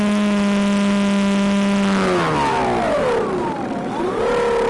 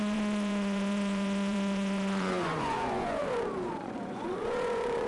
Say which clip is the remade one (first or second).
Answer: second